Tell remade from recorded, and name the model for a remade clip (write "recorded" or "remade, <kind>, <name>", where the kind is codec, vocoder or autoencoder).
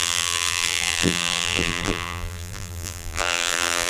remade, vocoder, BigVGAN v2